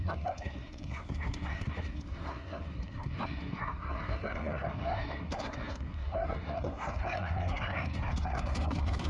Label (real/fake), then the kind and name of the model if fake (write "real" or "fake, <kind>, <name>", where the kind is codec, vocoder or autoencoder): fake, codec, SNAC